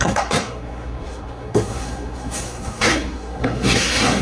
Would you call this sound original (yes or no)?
no